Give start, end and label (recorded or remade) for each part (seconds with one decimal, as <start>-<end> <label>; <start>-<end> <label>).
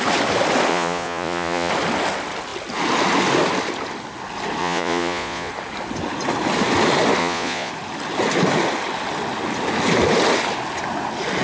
0.0-0.7 recorded; 0.7-1.7 remade; 1.7-4.6 recorded; 4.6-5.5 remade; 5.5-7.2 recorded; 7.2-7.7 remade; 7.7-11.4 recorded